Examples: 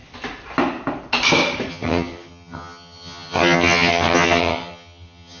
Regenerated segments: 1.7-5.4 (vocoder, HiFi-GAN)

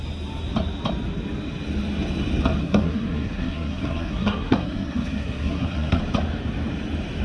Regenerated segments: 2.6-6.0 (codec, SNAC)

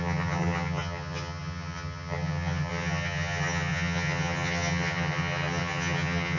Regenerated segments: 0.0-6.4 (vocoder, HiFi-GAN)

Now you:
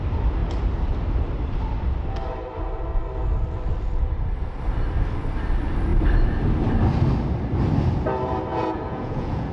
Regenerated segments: 8.5-9.5 (vocoder, Vocos)